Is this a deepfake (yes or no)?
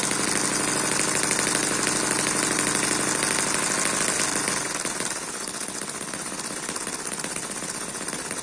no